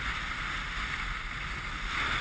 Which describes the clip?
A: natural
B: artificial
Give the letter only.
A